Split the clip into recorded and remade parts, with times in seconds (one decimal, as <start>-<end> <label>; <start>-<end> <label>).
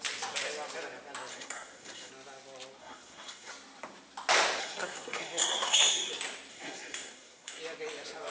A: 0.0-1.3 recorded; 1.3-2.1 remade; 2.1-2.8 recorded; 2.8-3.5 remade; 3.5-4.6 recorded; 4.6-6.1 remade; 6.1-6.5 recorded; 6.5-7.6 remade; 7.6-8.3 recorded